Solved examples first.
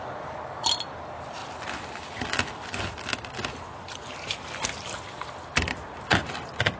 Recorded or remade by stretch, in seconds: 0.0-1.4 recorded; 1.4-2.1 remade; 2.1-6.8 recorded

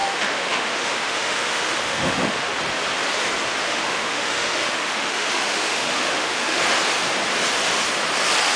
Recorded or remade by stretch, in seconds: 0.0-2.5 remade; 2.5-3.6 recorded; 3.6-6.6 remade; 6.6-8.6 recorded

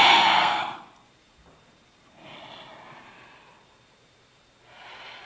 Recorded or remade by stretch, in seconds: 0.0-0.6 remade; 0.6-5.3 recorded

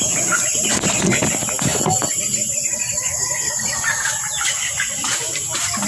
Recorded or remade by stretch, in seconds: 0.0-5.9 recorded

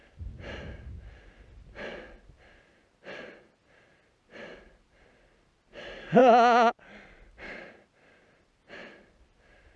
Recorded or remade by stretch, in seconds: 0.0-3.0 recorded; 3.0-6.2 remade; 6.2-8.4 recorded; 8.4-9.8 remade